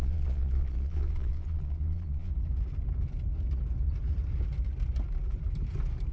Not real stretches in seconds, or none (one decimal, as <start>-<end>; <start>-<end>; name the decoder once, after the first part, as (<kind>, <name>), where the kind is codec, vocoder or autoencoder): 0.0-2.3 (vocoder, Vocos)